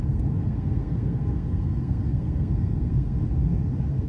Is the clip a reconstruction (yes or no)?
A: yes